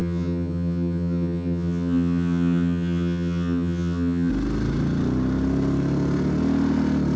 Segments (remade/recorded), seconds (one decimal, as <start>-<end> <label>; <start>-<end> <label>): 0.0-4.3 remade; 4.3-7.2 recorded